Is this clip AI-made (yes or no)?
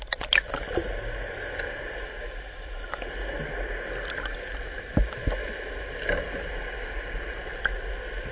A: no